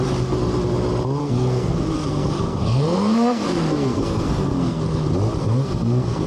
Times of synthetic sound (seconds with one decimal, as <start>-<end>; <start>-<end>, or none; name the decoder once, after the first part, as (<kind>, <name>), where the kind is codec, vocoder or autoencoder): 1.2-5.0 (codec, SNAC); 5.4-6.3